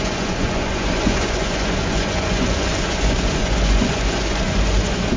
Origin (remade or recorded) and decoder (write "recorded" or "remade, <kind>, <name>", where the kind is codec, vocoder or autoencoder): remade, vocoder, Vocos